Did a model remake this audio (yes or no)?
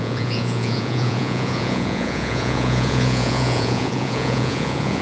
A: yes